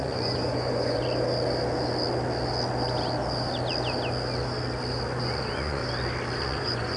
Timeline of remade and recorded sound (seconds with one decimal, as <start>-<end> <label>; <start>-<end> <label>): 0.0-1.0 remade; 1.0-5.2 recorded; 5.2-5.8 remade; 5.8-6.4 recorded; 6.4-7.0 remade